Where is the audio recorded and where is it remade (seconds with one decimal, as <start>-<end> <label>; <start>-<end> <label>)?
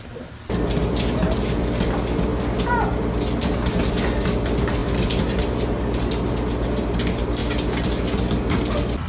0.0-9.1 recorded